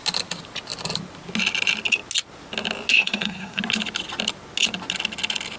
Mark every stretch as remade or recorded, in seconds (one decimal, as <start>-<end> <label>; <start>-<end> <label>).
0.0-2.9 recorded; 2.9-3.6 remade; 3.6-5.6 recorded